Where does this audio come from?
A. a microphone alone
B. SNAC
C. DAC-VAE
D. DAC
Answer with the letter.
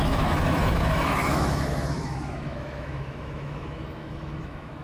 C